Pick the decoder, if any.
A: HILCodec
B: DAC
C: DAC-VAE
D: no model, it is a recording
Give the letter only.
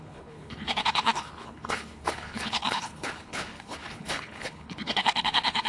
A